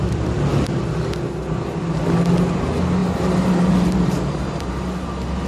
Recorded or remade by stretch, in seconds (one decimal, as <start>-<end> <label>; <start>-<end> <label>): 0.0-3.0 recorded; 3.0-4.7 remade; 4.7-5.5 recorded